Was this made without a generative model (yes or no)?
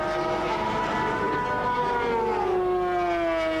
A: yes